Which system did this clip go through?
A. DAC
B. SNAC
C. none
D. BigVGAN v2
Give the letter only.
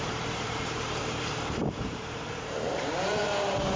D